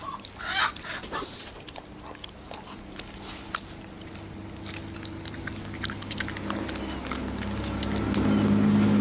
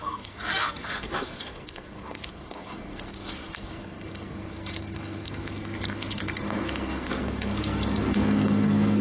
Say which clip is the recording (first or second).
first